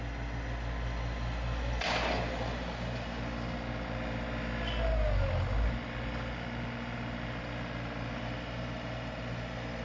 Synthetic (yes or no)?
no